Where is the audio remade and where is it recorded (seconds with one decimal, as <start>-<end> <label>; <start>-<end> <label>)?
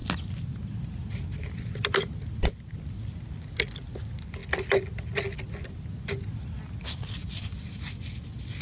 0.0-8.6 recorded